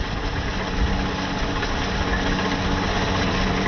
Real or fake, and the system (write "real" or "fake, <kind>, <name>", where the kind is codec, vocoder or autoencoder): real